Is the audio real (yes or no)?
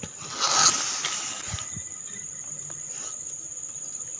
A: yes